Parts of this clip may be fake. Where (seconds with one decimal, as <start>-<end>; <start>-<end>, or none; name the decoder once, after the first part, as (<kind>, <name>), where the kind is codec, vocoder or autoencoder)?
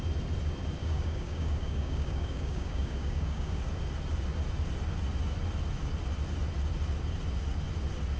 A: 0.8-3.6 (codec, DAC)